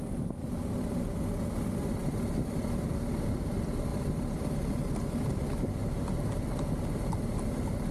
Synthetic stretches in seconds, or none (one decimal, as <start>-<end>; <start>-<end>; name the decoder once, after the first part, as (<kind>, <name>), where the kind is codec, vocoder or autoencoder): 0.4-1.2 (vocoder, BigVGAN v2); 2.0-2.8